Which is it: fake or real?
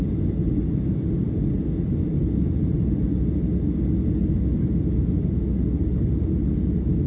real